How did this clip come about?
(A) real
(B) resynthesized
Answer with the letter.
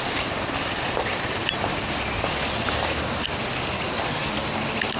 A